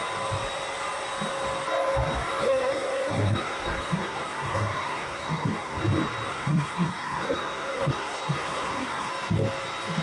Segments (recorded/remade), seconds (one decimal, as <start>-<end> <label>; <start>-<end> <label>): 0.0-2.4 recorded; 2.4-5.8 remade; 5.8-6.3 recorded; 6.3-9.1 remade; 9.1-10.0 recorded